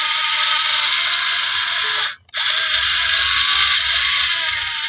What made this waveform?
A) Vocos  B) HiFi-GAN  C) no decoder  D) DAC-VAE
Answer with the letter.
C